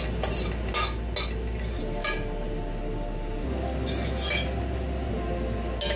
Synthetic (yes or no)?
no